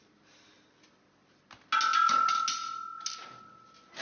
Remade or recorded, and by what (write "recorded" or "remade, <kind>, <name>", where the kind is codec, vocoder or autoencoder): recorded